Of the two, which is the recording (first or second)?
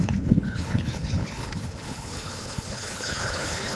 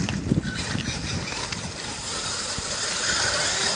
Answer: second